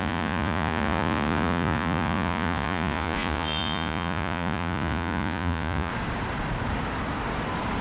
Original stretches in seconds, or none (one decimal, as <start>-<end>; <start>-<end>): 5.9-7.8